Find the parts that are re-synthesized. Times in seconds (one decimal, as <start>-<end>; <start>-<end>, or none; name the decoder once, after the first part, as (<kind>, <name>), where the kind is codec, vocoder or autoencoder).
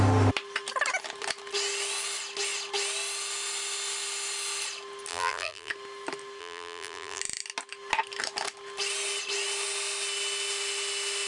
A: 5.1-5.7 (vocoder, BigVGAN v2); 6.4-7.2